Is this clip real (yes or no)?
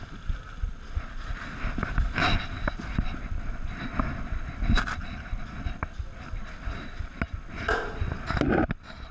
yes